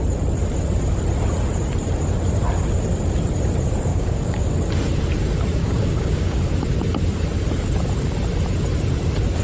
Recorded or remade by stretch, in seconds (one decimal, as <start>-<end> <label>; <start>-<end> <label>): 0.0-3.9 recorded; 3.9-4.5 remade; 4.5-5.6 recorded; 5.6-6.5 remade; 6.5-9.4 recorded